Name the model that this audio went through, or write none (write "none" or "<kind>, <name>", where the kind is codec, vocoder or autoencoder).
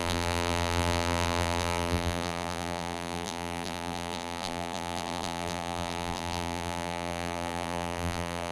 vocoder, BigVGAN v2